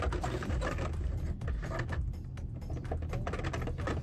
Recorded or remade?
recorded